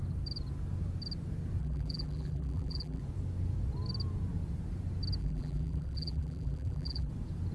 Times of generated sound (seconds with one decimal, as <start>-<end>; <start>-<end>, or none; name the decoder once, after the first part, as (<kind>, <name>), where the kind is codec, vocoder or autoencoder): 1.6-3.0 (vocoder, BigVGAN v2); 5.2-7.1